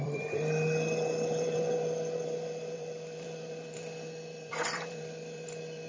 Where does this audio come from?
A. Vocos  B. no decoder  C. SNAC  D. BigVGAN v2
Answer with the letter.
D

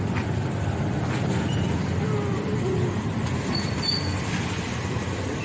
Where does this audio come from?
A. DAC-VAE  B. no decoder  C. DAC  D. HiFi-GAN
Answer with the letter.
B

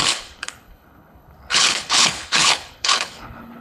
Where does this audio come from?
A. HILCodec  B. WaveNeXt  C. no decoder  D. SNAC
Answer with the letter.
A